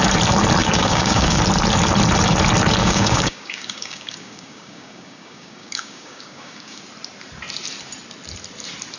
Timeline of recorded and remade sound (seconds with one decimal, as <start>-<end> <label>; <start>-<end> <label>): 0.0-0.6 recorded; 0.6-1.4 remade; 1.4-2.8 recorded; 2.8-6.8 remade; 6.8-9.0 recorded